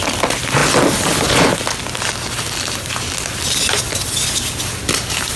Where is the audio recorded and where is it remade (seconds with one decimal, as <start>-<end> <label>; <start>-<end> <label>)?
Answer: 0.0-5.4 recorded